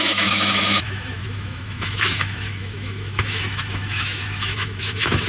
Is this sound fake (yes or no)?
yes